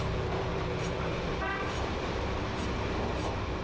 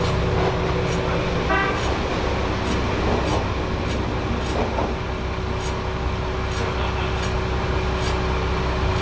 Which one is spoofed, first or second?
first